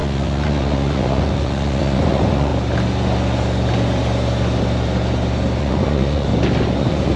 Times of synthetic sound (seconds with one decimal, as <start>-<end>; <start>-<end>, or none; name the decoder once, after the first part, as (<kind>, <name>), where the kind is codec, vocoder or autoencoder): 0.0-2.5 (vocoder, Vocos); 5.6-6.3; 6.8-7.2